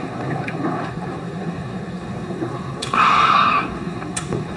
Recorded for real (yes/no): no